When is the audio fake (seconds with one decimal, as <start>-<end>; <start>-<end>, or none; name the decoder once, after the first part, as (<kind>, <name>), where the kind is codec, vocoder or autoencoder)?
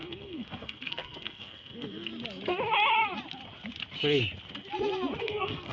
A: 0.0-2.1 (codec, SNAC); 5.2-5.7